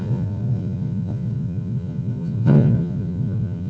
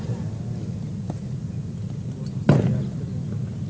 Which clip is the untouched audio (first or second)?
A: second